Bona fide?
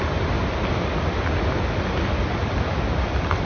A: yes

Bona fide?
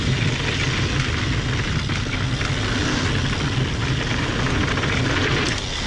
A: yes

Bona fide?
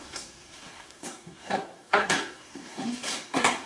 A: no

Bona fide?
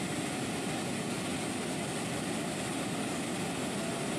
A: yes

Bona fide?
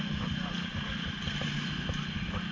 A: yes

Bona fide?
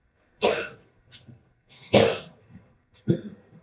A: no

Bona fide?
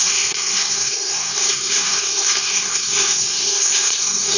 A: no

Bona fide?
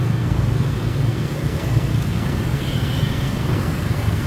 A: no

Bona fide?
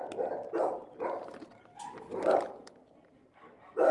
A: yes